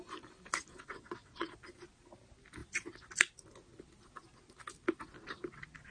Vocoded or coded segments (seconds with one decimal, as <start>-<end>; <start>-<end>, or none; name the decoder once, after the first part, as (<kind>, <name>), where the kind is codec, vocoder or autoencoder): 0.7-1.5 (vocoder, WaveNeXt)